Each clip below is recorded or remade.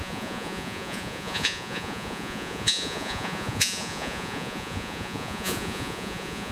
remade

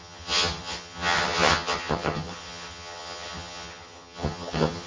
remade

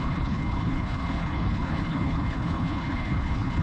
remade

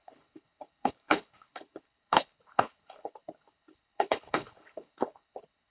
remade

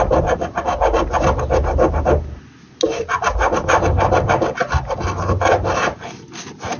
recorded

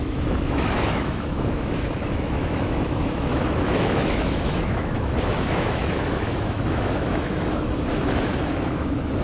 remade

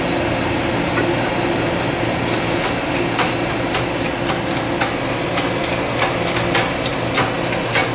recorded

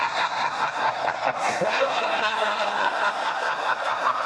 remade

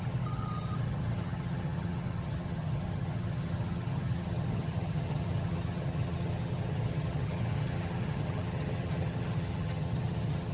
remade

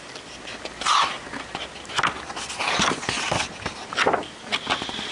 recorded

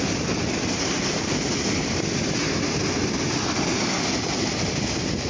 recorded